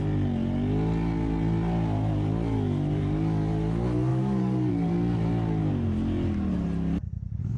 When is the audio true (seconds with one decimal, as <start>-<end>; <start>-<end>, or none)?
0.0-4.1; 4.7-7.6